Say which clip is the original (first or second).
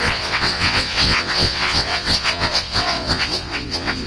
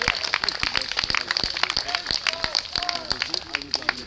second